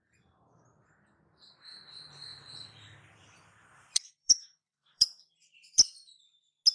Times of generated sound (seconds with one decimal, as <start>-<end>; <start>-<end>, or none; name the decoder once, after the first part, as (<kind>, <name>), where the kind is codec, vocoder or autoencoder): 2.3-6.3 (vocoder, BigVGAN v2)